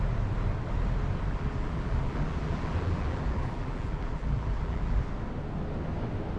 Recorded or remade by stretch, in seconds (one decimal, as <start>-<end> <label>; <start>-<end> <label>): 0.0-1.3 recorded; 1.3-5.1 remade; 5.1-6.4 recorded